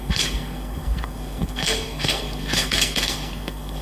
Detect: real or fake fake